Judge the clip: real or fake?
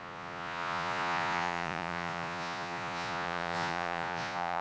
fake